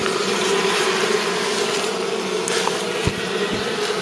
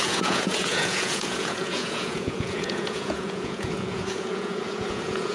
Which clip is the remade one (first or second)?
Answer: second